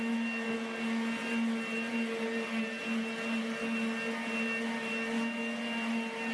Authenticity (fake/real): real